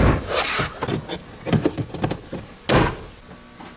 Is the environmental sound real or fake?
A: real